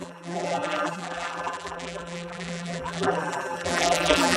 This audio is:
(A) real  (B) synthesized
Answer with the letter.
B